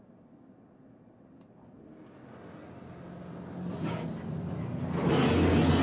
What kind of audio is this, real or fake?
real